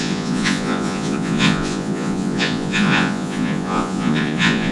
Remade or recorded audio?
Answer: remade